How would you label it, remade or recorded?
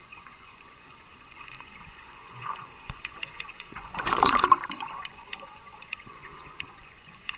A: remade